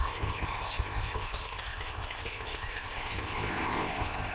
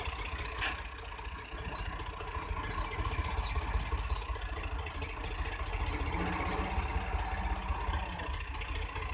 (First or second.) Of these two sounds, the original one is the second